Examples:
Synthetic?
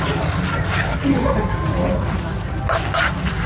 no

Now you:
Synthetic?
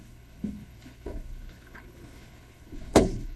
yes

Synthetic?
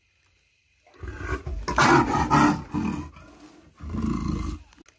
no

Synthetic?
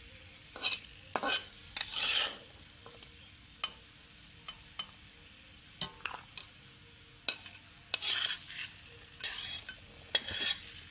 no